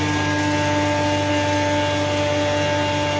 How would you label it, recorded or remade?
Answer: recorded